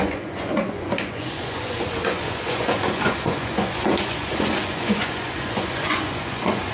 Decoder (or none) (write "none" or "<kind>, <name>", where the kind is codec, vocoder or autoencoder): vocoder, Vocos